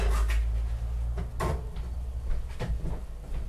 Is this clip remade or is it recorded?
recorded